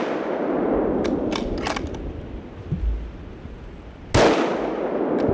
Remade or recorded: recorded